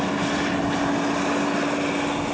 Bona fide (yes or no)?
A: yes